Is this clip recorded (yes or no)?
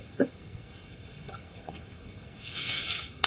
no